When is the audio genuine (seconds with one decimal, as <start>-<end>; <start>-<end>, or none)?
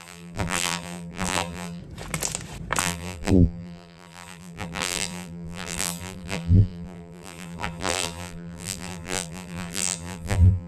1.8-2.8